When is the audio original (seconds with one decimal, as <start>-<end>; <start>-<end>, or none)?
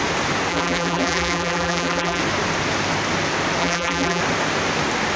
0.0-0.5; 2.2-3.6; 4.2-5.2